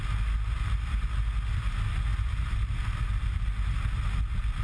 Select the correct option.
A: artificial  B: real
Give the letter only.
B